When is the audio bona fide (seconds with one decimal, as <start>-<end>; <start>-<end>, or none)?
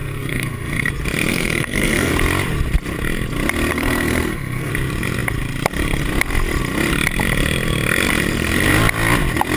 0.9-1.3; 2.1-3.7; 4.7-9.6